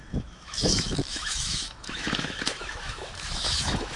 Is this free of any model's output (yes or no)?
no